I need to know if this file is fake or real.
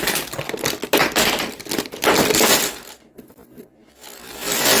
real